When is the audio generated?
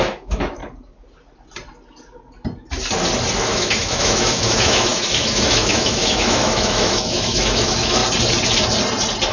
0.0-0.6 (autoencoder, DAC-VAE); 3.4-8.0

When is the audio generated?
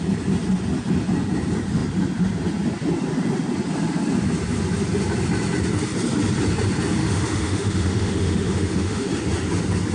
7.0-9.1 (autoencoder, DAC-VAE)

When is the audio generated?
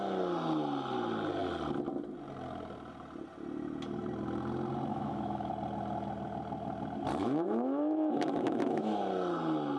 4.9-5.5 (autoencoder, DAC-VAE); 7.2-9.0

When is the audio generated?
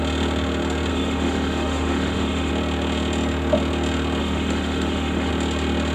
0.9-2.5 (autoencoder, DAC-VAE); 4.2-5.3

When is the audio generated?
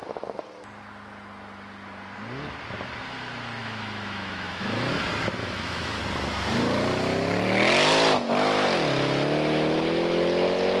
3.6-4.9 (autoencoder, DAC-VAE); 5.4-6.0